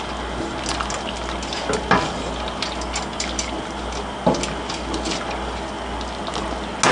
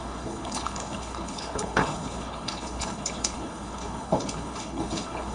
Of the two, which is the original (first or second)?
first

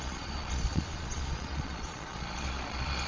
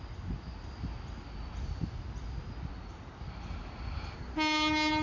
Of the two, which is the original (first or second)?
second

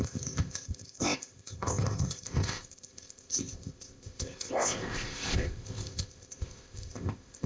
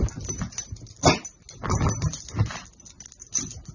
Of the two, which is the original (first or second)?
second